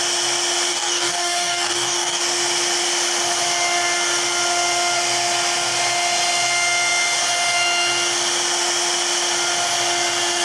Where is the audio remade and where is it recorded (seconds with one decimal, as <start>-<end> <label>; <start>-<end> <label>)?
0.0-0.7 recorded; 0.7-2.2 remade; 2.2-10.4 recorded